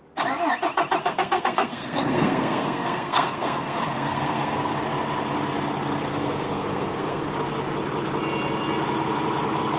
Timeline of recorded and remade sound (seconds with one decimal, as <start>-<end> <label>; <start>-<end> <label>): 0.0-1.0 recorded; 1.0-4.7 remade; 4.7-6.1 recorded; 6.1-7.3 remade; 7.3-9.8 recorded